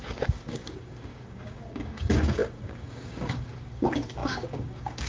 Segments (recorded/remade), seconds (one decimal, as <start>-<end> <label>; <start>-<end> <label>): 0.0-5.1 remade

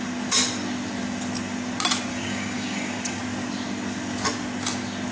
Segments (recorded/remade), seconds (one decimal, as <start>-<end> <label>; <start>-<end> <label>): 0.0-2.1 recorded; 2.1-3.2 remade; 3.2-5.1 recorded

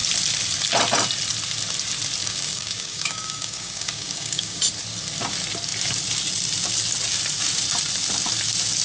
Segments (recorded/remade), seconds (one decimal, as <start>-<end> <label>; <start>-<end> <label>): 0.0-2.2 recorded; 2.2-4.6 remade; 4.6-8.8 recorded

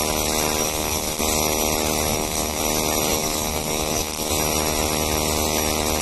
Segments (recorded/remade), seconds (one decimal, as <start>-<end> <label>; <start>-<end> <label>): 0.0-0.6 recorded; 0.6-1.2 remade; 1.2-2.1 recorded; 2.1-2.6 remade; 2.6-3.1 recorded; 3.1-4.3 remade; 4.3-6.0 recorded

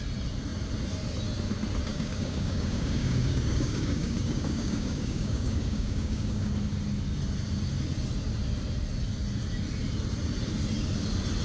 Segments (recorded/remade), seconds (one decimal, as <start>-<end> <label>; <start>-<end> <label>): 0.0-1.9 recorded; 1.9-6.5 remade; 6.5-11.4 recorded

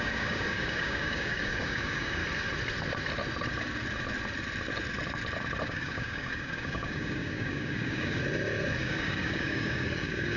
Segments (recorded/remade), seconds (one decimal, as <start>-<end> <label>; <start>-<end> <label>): 0.0-2.2 remade; 2.2-5.6 recorded; 5.6-8.2 remade; 8.2-8.8 recorded; 8.8-10.4 remade

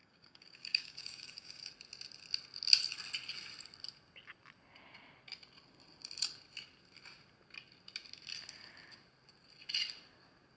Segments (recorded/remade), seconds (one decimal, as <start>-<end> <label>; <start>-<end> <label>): 0.0-1.7 remade; 1.7-10.6 recorded